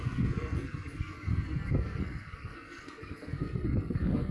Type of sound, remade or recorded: remade